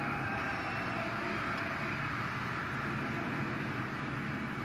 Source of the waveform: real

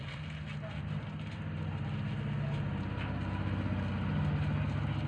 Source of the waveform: real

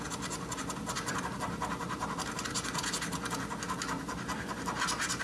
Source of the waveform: real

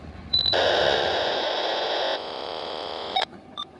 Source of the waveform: fake